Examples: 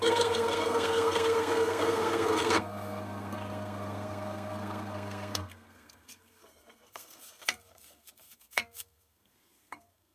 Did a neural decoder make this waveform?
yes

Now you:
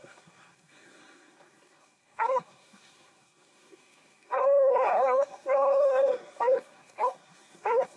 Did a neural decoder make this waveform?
yes